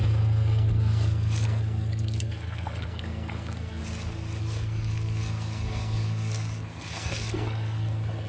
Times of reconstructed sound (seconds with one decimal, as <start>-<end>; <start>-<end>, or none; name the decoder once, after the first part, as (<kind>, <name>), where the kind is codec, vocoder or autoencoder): 0.0-3.8 (codec, SNAC); 4.4-8.3